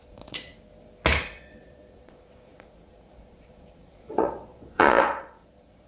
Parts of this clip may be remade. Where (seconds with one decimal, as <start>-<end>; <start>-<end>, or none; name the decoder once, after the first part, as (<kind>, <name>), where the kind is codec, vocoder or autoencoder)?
0.0-0.5 (vocoder, Vocos); 1.2-5.9